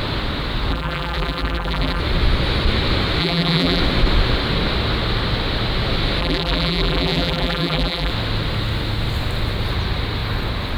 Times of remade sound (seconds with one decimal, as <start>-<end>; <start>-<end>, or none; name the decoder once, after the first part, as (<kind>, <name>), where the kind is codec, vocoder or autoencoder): 0.7-2.0 (vocoder, BigVGAN v2); 3.2-3.8; 6.2-8.1